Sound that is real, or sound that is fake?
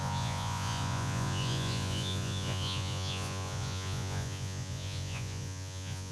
fake